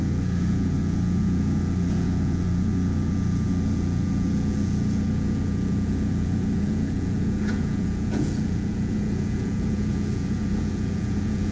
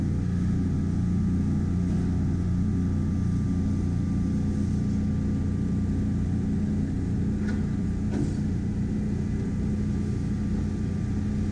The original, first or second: second